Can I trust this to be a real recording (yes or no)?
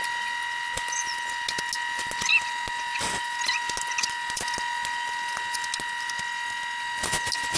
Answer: yes